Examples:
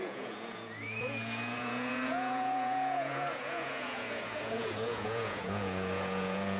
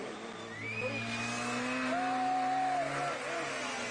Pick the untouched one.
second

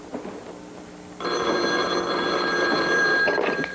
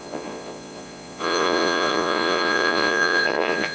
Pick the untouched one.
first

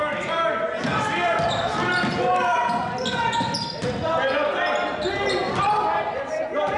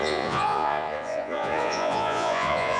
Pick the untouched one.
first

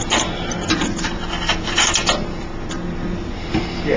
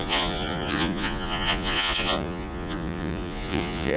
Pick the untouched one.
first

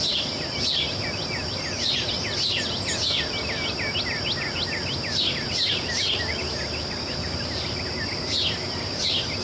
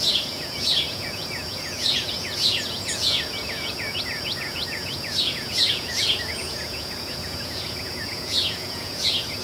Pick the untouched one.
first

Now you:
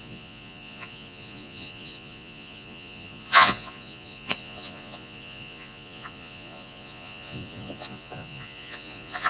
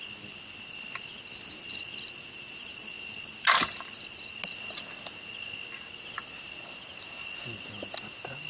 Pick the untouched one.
second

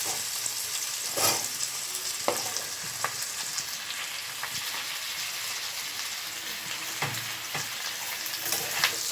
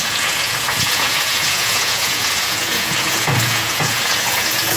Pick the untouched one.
first